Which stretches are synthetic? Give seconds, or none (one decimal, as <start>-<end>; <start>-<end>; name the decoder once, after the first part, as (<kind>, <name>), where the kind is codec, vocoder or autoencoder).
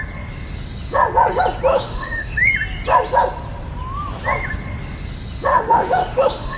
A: 1.7-2.5 (autoencoder, DAC-VAE); 5.5-6.6